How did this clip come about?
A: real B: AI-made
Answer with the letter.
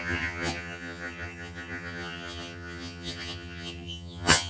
B